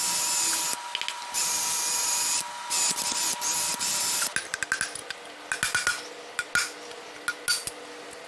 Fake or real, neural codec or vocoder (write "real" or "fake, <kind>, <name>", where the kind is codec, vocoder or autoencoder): real